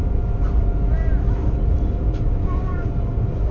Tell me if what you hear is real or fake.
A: fake